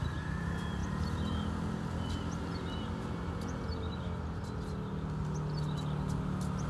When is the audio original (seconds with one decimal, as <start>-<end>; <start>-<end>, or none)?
0.0-6.7